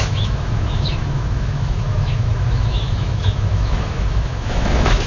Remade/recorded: remade